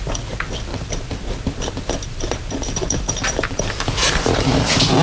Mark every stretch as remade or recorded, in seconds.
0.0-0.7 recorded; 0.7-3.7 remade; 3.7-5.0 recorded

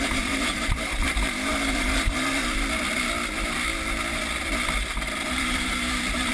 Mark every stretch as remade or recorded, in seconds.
0.0-1.5 remade; 1.5-5.3 recorded; 5.3-6.3 remade